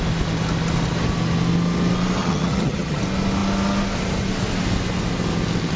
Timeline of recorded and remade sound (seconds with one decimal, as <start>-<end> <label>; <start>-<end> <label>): 0.0-2.2 recorded; 2.2-3.0 remade; 3.0-5.8 recorded